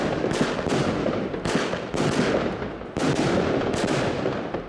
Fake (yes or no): no